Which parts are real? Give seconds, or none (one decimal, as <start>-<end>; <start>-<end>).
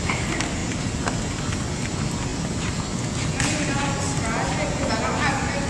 0.0-5.7